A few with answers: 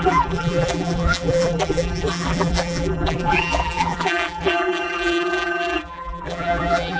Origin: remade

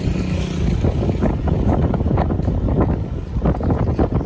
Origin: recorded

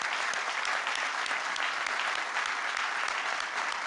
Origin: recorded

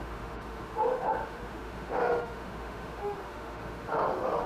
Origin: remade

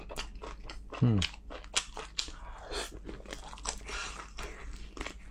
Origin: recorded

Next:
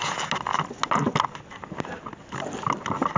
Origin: recorded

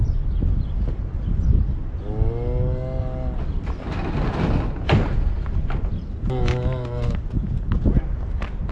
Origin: recorded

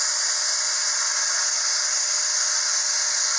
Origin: recorded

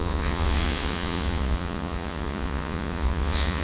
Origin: remade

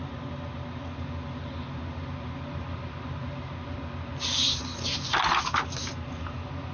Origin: recorded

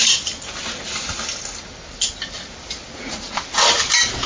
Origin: recorded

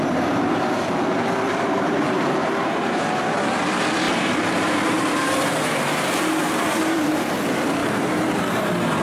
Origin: remade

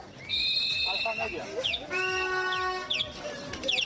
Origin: recorded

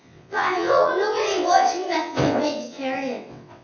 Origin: remade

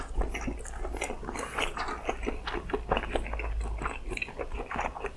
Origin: recorded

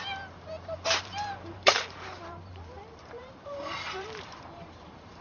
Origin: remade